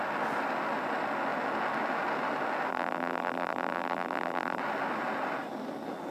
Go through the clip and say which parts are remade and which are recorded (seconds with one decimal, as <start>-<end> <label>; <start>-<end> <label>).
0.0-2.7 recorded; 2.7-4.6 remade; 4.6-6.1 recorded